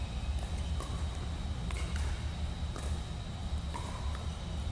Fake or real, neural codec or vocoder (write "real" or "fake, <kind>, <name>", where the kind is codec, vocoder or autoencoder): real